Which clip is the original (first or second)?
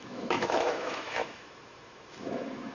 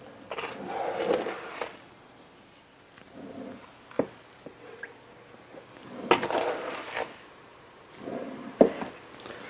second